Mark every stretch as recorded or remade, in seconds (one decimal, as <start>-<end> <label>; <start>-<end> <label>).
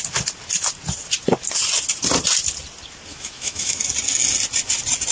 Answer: 0.0-3.1 recorded; 3.1-3.8 remade; 3.8-5.1 recorded